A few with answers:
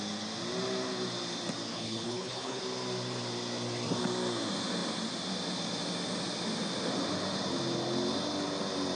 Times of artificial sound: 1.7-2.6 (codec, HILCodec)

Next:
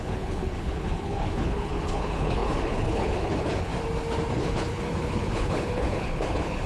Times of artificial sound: 0.0-3.7 (codec, HILCodec); 4.3-6.7

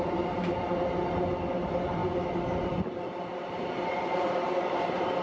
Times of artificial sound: none